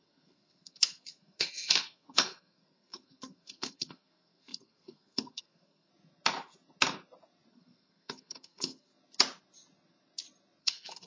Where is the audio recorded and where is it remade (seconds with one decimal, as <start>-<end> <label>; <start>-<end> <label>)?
0.0-5.9 remade; 5.9-7.5 recorded; 7.5-8.9 remade; 8.9-10.6 recorded; 10.6-11.1 remade